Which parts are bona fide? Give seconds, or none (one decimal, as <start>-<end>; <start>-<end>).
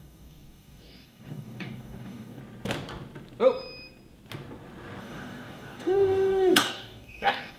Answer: 2.4-5.0